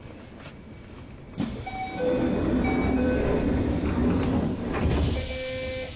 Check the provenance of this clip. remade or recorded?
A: recorded